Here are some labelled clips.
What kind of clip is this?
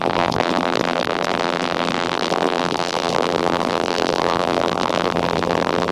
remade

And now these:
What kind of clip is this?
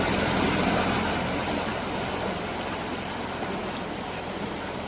recorded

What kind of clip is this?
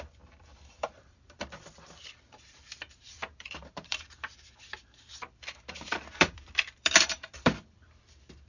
remade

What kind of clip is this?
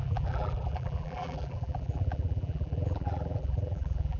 remade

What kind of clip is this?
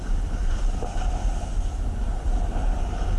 recorded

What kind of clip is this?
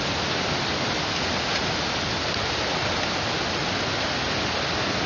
recorded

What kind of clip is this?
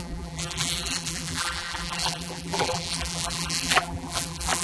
remade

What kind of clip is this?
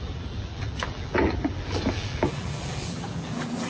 remade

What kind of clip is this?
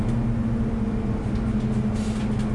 recorded